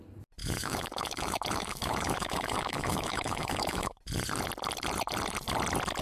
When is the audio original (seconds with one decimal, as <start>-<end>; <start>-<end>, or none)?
0.0-0.4; 4.0-6.0